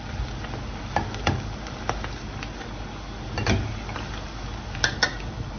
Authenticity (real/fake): real